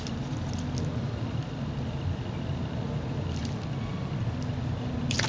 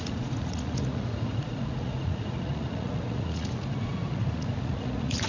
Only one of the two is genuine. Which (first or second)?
first